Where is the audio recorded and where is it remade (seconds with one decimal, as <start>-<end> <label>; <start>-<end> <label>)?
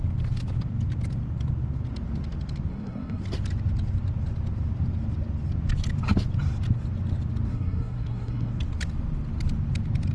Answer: 0.0-2.7 recorded; 2.7-3.2 remade; 3.2-7.5 recorded; 7.5-8.5 remade; 8.5-10.1 recorded